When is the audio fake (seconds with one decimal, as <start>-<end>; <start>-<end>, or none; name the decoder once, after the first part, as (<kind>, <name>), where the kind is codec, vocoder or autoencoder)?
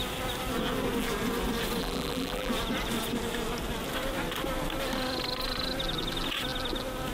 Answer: 1.8-2.5 (vocoder, BigVGAN v2)